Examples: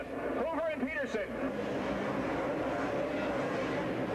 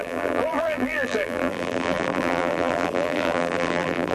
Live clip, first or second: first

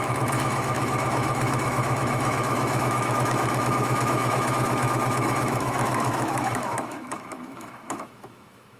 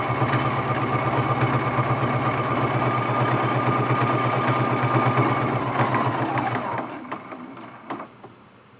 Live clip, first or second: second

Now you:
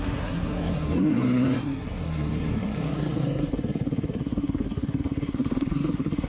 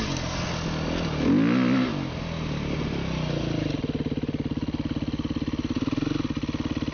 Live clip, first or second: second